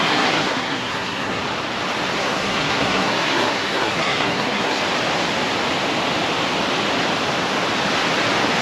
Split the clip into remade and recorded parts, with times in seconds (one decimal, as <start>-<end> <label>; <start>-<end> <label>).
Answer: 0.0-1.4 remade; 1.4-2.2 recorded; 2.2-4.8 remade; 4.8-8.6 recorded